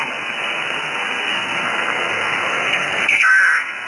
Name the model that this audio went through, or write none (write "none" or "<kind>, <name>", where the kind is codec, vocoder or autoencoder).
codec, SNAC